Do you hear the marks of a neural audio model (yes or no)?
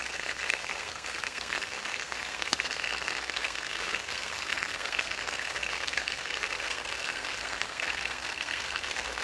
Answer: yes